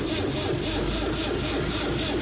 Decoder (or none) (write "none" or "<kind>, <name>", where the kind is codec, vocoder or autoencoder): none